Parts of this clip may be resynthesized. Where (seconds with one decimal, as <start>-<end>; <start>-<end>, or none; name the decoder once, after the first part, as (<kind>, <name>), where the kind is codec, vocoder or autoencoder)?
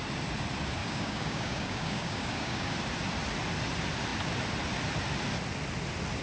0.8-2.7 (codec, DAC)